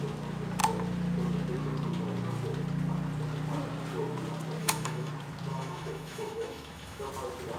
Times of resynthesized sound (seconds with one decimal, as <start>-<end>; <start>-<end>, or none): 4.6-5.1; 5.5-7.1